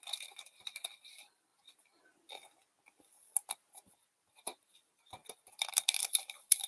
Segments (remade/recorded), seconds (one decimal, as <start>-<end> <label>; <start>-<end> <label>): 0.0-1.5 remade; 1.5-3.7 recorded; 3.7-4.5 remade; 4.5-5.7 recorded; 5.7-6.7 remade